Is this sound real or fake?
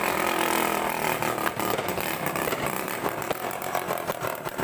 real